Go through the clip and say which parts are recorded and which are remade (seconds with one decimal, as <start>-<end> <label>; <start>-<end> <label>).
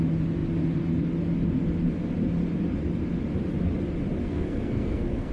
0.0-4.2 recorded; 4.2-5.3 remade